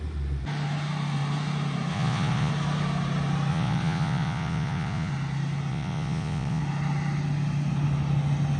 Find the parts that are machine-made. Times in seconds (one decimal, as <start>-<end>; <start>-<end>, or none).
1.9-2.5; 3.5-5.1; 5.7-6.6